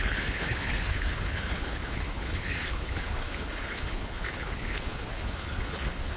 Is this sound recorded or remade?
remade